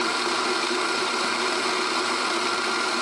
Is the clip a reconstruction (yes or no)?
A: no